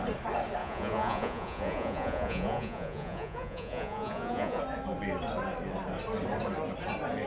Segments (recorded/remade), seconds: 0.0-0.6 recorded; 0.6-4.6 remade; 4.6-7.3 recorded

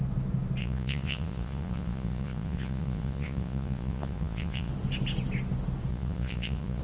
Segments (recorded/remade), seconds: 0.0-0.6 recorded; 0.6-4.7 remade; 4.7-5.9 recorded; 5.9-6.8 remade